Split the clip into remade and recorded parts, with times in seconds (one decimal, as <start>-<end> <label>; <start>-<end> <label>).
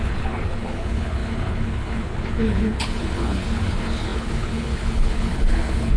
0.0-6.0 remade